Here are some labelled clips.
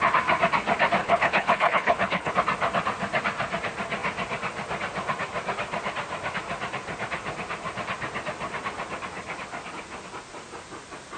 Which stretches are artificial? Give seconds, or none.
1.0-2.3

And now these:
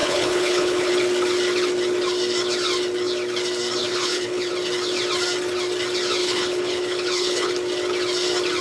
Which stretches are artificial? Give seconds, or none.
0.0-0.9; 3.8-4.5; 6.2-7.5

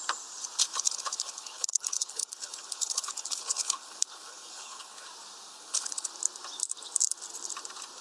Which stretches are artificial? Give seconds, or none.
0.7-5.1; 5.5-6.1

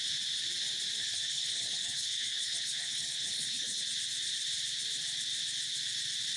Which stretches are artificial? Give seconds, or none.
1.0-3.8

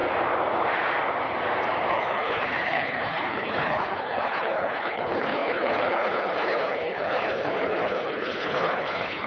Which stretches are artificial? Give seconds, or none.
1.9-9.3

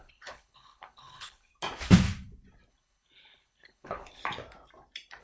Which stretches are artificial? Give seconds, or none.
0.0-1.5; 2.7-4.2

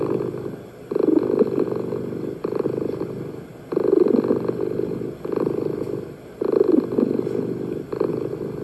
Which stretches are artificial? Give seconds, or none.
none

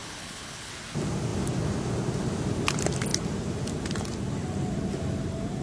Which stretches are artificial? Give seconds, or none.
0.0-0.7